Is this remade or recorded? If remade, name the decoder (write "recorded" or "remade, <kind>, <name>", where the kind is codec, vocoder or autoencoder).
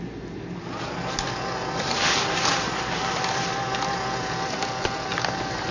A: recorded